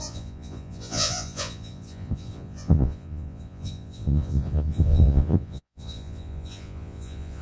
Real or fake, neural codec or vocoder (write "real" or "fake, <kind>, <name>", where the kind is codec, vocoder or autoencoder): fake, vocoder, Vocos